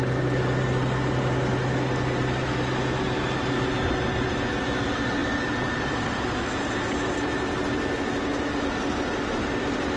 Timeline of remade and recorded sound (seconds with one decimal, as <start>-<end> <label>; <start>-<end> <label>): 0.0-10.0 recorded